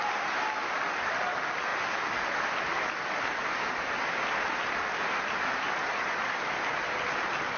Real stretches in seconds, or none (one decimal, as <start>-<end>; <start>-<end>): 0.0-7.6